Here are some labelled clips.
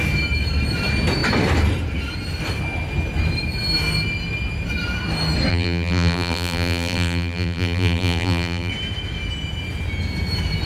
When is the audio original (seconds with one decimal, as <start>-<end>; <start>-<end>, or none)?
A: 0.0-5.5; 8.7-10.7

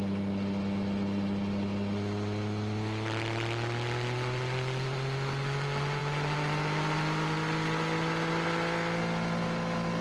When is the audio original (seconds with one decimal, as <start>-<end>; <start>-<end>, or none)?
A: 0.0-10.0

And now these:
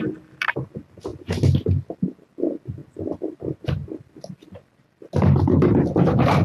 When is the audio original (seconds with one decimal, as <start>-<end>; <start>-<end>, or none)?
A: 0.0-6.4

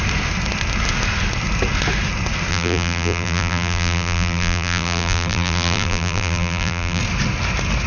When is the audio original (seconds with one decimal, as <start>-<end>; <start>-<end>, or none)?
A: 0.0-2.5; 7.0-7.9

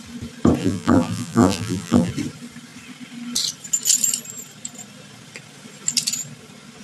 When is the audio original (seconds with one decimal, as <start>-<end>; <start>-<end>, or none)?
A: 0.0-0.6; 2.1-6.8

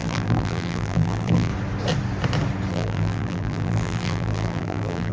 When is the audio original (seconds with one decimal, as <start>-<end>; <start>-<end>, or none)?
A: 1.5-2.7